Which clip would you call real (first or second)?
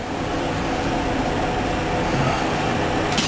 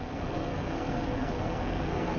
first